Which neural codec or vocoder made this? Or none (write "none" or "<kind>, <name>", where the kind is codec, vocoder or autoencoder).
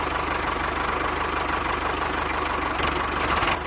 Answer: none